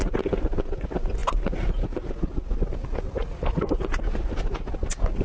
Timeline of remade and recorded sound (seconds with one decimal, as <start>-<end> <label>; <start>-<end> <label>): 0.0-5.2 recorded

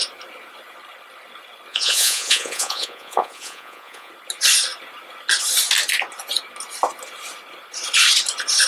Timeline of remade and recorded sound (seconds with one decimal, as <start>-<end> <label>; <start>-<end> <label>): 0.0-1.7 recorded; 1.7-4.1 remade; 4.1-8.7 recorded

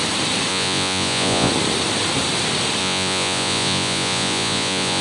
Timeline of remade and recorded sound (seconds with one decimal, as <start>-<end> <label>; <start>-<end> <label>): 0.0-0.5 recorded; 0.5-1.5 remade; 1.5-2.8 recorded; 2.8-5.0 remade

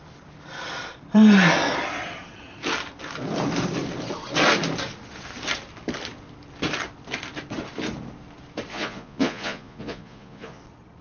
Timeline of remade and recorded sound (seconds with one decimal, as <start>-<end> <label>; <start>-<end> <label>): 0.0-8.7 recorded; 8.7-10.6 remade; 10.6-11.0 recorded